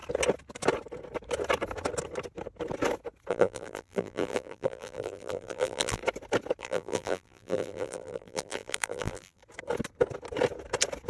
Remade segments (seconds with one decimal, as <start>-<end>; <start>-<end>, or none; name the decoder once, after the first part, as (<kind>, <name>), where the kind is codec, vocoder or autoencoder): 3.3-6.0 (vocoder, BigVGAN v2); 6.6-9.4